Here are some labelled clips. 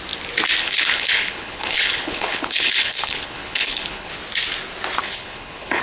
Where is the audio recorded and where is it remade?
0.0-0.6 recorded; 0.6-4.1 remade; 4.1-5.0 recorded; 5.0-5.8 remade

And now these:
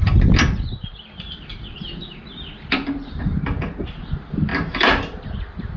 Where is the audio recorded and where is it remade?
0.0-5.8 recorded

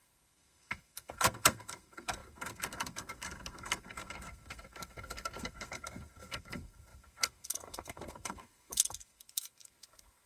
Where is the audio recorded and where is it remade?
0.0-10.3 remade

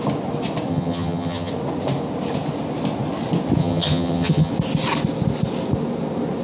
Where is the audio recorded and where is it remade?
0.0-0.7 recorded; 0.7-1.5 remade; 1.5-3.6 recorded; 3.6-4.5 remade; 4.5-6.4 recorded

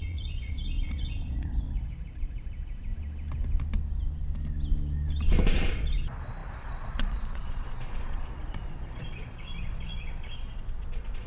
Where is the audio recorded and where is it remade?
0.0-2.9 remade; 2.9-5.7 recorded; 5.7-11.3 remade